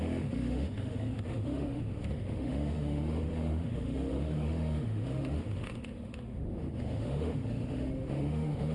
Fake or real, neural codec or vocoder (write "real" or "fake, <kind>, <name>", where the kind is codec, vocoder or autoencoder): fake, autoencoder, DAC-VAE